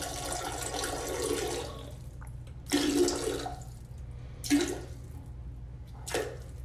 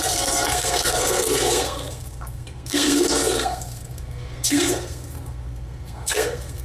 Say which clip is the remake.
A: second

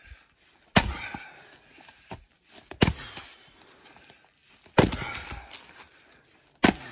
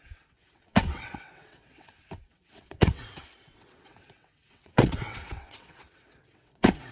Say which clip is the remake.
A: second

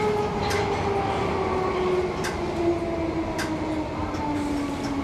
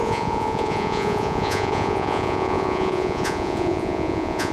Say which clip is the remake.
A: second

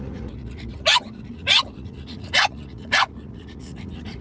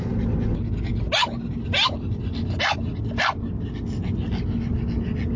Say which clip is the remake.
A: first